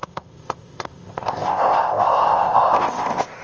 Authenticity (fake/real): fake